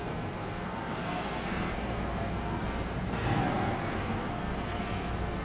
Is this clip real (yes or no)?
no